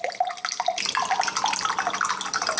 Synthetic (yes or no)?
no